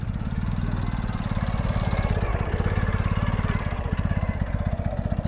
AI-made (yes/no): no